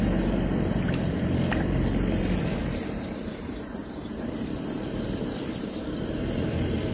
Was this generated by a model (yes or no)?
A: yes